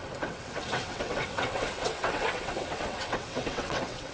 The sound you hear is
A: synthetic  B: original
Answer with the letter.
A